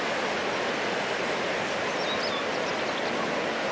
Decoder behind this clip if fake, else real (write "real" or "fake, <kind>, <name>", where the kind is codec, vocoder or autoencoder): real